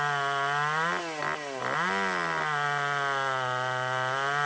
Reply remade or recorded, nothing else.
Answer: recorded